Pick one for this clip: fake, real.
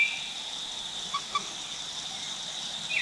real